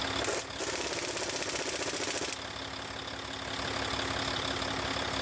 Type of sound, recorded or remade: recorded